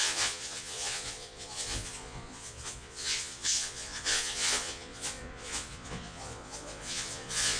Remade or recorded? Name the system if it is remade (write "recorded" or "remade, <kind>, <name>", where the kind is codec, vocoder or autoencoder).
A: remade, vocoder, Vocos